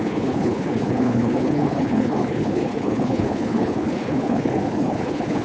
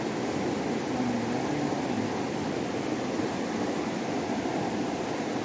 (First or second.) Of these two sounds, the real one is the second